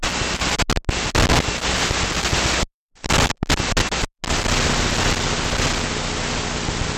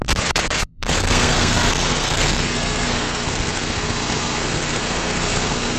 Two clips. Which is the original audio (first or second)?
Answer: first